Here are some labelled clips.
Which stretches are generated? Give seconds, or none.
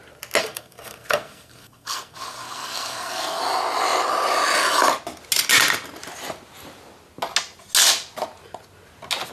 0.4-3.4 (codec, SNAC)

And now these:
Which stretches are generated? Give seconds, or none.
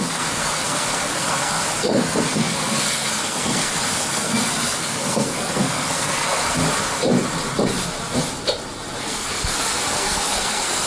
0.0-6.6 (codec, SNAC); 9.0-10.9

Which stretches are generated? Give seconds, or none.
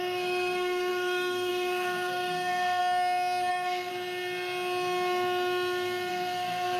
0.0-2.8 (codec, SNAC); 3.5-3.9; 6.1-6.8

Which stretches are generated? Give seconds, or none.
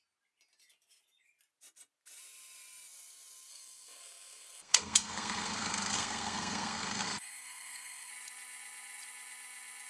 3.5-8.1 (codec, SNAC)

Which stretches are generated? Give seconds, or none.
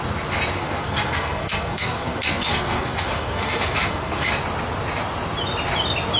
0.6-4.3 (codec, SNAC)